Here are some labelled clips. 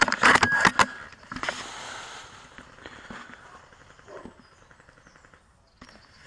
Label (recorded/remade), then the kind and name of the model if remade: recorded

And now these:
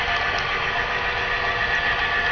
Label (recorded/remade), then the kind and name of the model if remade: recorded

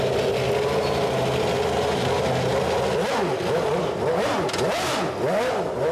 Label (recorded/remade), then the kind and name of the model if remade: recorded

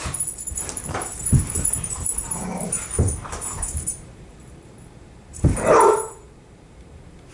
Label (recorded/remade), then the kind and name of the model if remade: remade, vocoder, BigVGAN v2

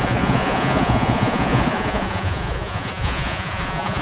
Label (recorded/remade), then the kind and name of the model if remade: remade, vocoder, Vocos